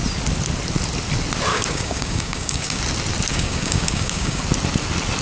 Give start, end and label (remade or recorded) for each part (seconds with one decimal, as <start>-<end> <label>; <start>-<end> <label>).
0.0-1.5 recorded; 1.5-2.8 remade; 2.8-3.3 recorded; 3.3-4.4 remade; 4.4-5.2 recorded